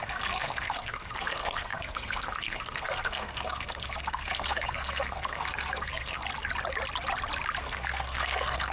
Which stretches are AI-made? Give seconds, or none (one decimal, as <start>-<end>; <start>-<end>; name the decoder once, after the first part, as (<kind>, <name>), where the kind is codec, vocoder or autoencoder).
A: 0.0-6.2 (codec, SNAC); 7.6-8.7